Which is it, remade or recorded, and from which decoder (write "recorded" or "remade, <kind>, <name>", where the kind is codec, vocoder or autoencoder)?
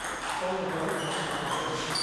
recorded